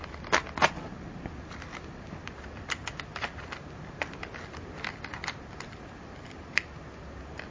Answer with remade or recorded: recorded